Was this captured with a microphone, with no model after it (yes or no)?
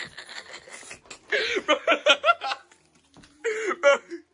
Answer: yes